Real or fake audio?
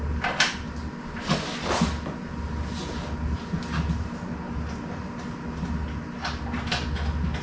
real